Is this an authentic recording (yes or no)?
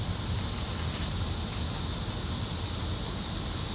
yes